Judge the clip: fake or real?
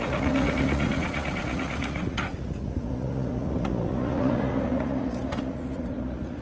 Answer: fake